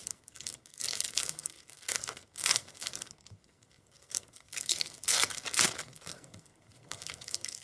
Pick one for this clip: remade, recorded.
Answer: remade